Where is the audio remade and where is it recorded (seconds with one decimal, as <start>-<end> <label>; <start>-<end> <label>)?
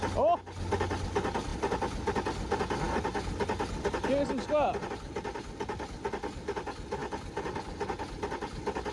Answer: 0.0-8.9 recorded